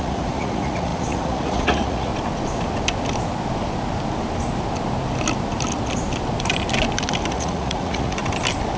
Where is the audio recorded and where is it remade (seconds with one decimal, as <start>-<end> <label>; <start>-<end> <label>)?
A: 0.0-2.1 remade; 2.1-7.3 recorded; 7.3-8.2 remade; 8.2-8.8 recorded